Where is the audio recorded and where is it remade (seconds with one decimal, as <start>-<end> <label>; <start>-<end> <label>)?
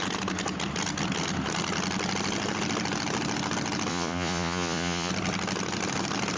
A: 0.0-3.9 recorded; 3.9-5.1 remade; 5.1-6.4 recorded